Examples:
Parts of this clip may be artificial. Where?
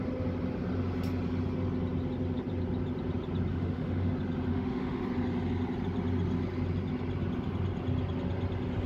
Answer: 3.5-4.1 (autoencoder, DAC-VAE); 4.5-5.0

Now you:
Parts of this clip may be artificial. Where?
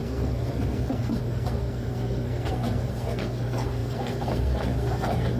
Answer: 0.0-5.4 (codec, SNAC)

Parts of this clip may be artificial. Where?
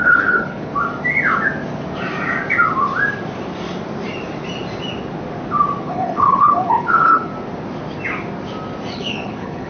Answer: 0.0-0.7 (codec, HILCodec); 5.8-7.3; 8.9-9.7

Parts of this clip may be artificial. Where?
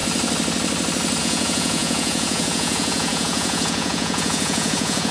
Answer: 1.2-5.1 (vocoder, Vocos)